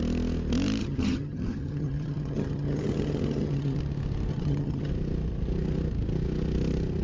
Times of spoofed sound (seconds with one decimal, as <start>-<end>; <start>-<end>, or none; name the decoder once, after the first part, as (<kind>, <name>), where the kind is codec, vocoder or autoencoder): 0.8-3.8 (vocoder, HiFi-GAN); 4.3-4.9